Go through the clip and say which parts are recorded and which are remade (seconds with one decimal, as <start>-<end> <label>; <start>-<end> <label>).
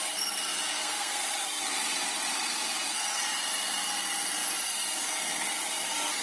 0.0-0.7 recorded; 0.7-1.2 remade; 1.2-6.2 recorded